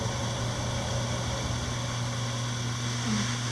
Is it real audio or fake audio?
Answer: real